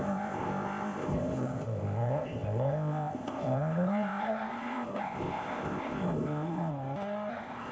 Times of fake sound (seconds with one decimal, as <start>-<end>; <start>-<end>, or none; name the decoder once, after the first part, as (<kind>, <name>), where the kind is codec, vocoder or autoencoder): 0.0-6.7 (codec, ZipCodec); 7.3-7.7